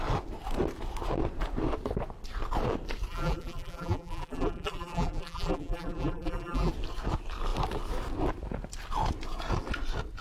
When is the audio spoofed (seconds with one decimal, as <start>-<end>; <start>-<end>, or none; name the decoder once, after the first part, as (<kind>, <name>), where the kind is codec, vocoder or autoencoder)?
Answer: 3.1-6.7 (vocoder, BigVGAN v2)